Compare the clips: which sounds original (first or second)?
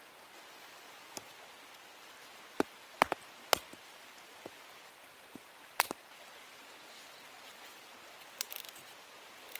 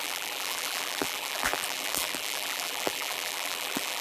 first